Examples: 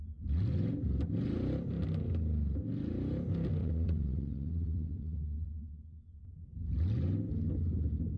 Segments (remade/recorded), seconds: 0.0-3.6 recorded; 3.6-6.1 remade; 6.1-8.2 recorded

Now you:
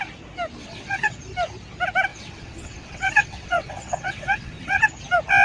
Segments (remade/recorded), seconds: 0.0-0.6 recorded; 0.6-1.2 remade; 1.2-2.1 recorded; 2.1-4.8 remade; 4.8-5.4 recorded